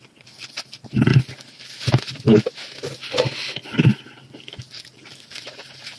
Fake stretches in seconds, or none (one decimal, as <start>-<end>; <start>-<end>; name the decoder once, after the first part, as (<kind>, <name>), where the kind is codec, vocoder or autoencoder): 0.0-1.1 (vocoder, BigVGAN v2); 4.7-6.0